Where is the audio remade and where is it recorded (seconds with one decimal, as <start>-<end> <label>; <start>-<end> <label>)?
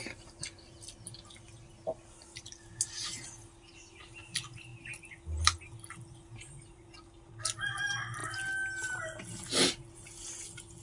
0.0-10.8 recorded